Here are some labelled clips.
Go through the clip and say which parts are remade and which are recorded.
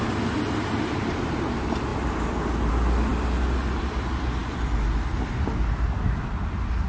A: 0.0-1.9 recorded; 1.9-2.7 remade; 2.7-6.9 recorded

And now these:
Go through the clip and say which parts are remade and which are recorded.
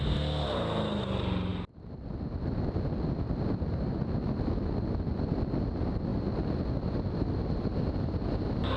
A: 0.0-8.8 recorded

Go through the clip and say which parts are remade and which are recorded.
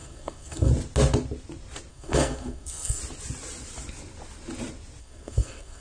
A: 0.0-0.7 remade; 0.7-1.9 recorded; 1.9-3.0 remade; 3.0-5.0 recorded; 5.0-5.8 remade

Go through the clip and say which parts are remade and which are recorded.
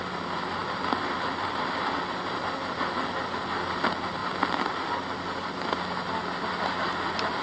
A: 0.0-0.6 recorded; 0.6-2.1 remade; 2.1-4.2 recorded; 4.2-4.9 remade; 4.9-7.4 recorded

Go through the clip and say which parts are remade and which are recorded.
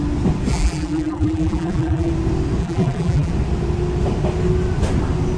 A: 0.0-0.5 recorded; 0.5-2.1 remade; 2.1-2.6 recorded; 2.6-3.3 remade; 3.3-5.4 recorded